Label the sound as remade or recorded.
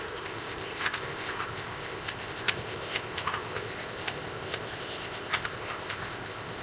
remade